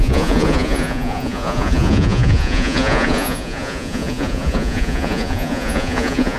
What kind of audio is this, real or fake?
fake